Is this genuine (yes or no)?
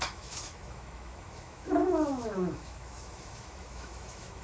no